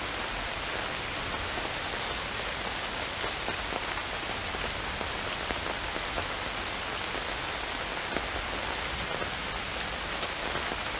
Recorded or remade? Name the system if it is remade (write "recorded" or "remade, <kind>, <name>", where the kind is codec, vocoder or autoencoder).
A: recorded